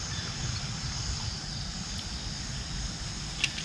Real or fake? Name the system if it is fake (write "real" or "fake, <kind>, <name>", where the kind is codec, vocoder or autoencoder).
real